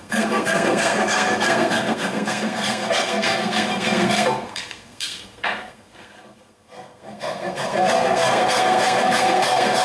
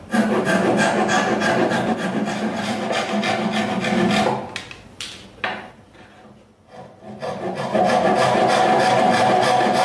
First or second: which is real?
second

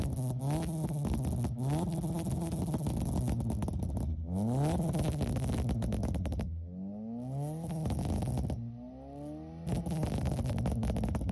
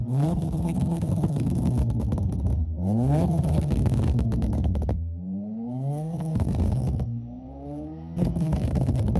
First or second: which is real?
first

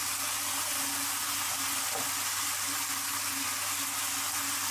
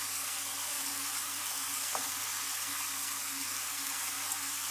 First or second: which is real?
first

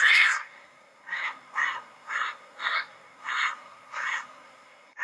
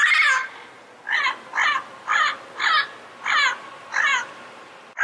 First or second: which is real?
second